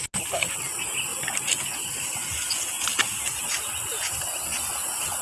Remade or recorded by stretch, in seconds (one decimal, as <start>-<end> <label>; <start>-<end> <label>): 0.0-5.2 recorded